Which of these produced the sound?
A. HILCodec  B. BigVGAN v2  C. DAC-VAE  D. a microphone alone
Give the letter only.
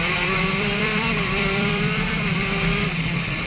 B